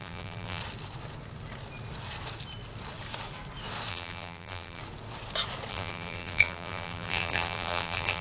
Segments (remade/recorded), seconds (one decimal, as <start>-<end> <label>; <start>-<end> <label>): 0.0-0.6 remade; 0.6-3.9 recorded; 3.9-4.8 remade; 4.8-5.7 recorded; 5.7-8.2 remade